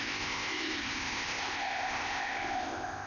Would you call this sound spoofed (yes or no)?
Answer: yes